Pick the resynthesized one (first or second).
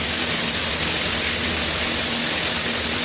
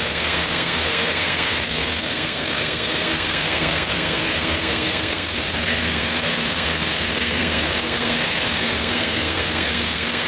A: second